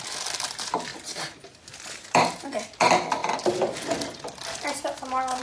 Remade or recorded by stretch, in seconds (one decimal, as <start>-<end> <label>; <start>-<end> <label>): 0.0-5.4 recorded